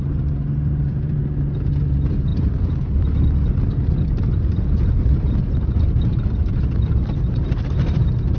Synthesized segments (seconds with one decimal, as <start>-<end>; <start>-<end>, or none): none